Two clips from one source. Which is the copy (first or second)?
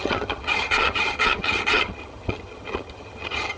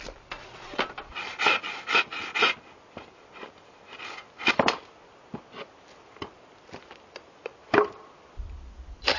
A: first